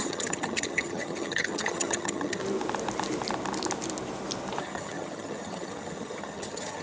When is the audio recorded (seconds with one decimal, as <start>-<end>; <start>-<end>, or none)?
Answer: 2.4-4.6